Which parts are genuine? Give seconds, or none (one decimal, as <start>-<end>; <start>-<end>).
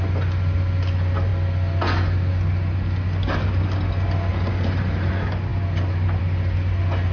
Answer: 0.0-7.1